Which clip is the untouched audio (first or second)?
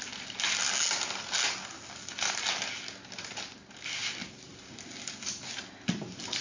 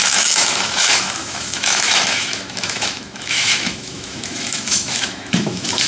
first